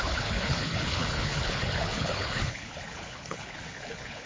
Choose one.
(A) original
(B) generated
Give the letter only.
B